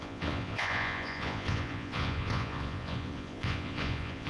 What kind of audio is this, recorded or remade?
remade